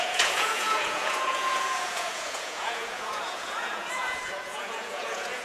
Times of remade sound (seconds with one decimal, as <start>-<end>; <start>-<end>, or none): 0.0-5.4